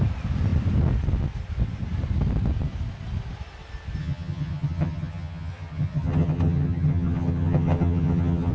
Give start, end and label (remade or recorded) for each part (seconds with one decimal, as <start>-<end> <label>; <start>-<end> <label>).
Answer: 0.0-4.0 recorded; 4.0-8.5 remade